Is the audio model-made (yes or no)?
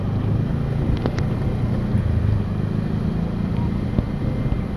no